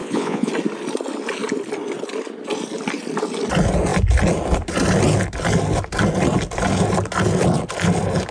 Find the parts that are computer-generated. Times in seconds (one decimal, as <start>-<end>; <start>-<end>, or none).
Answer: 0.0-0.5